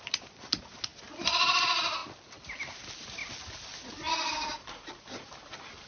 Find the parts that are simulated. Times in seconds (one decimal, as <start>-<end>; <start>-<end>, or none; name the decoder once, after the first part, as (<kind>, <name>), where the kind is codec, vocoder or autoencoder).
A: none